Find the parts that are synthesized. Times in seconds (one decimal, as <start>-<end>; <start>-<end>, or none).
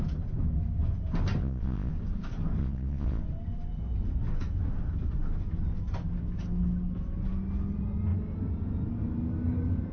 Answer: 1.4-1.9; 2.6-3.2